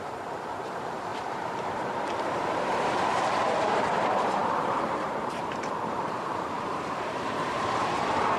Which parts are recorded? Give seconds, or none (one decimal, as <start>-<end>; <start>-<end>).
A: none